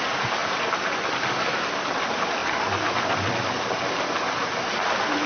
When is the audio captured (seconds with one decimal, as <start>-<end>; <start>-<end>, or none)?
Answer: 0.0-5.3